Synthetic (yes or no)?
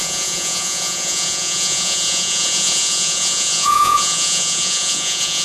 yes